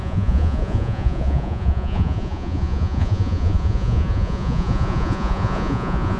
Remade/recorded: remade